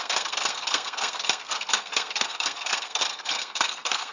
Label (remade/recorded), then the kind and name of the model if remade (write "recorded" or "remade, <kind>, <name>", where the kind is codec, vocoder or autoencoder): remade, codec, SNAC